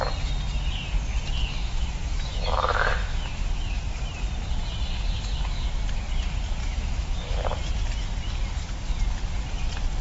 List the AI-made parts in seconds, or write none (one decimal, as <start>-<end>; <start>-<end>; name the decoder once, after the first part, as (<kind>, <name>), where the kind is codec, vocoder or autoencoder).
1.4-3.9 (autoencoder, DAC-VAE); 6.6-7.4